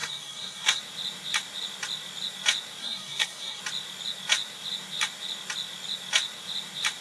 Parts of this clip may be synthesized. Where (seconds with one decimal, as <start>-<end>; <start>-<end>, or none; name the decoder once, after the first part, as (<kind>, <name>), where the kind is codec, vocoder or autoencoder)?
0.0-0.8 (codec, SNAC); 2.8-3.6